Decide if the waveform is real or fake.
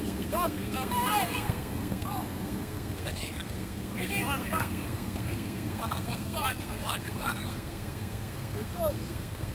fake